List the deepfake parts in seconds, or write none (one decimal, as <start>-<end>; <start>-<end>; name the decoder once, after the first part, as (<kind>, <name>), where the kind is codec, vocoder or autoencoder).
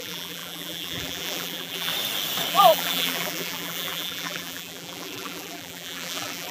0.0-1.9 (vocoder, BigVGAN v2); 2.5-6.5